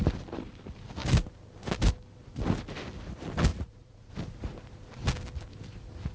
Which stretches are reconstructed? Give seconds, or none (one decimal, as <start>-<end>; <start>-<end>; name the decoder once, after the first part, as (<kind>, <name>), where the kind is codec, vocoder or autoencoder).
3.5-4.1 (vocoder, Vocos)